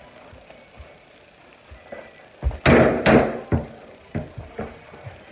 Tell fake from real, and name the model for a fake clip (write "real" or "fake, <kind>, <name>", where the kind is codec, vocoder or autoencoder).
real